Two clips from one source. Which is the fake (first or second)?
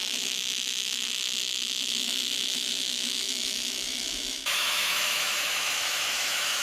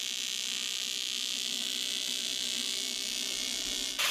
first